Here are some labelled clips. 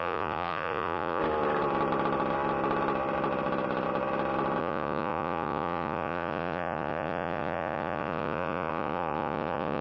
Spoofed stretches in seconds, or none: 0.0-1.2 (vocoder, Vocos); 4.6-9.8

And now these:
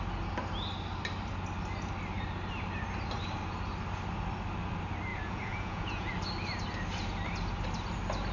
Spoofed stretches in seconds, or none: 5.1-6.1 (vocoder, Vocos)

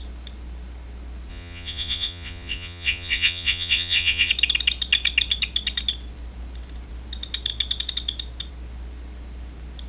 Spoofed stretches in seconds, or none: 1.3-4.3 (vocoder, Vocos)